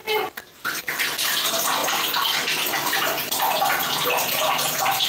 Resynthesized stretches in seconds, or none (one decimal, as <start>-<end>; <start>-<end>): none